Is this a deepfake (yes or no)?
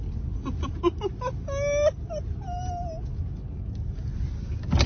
no